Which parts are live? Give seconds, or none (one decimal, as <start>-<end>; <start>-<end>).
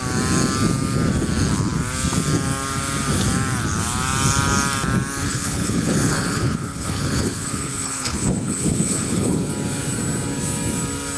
0.0-5.2; 9.5-11.2